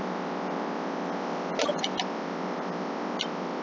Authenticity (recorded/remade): recorded